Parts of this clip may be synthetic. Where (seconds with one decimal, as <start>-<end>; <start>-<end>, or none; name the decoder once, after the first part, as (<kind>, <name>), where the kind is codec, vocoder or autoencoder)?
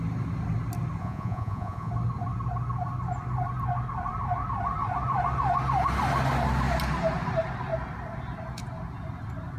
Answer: 1.0-1.9 (vocoder, Vocos)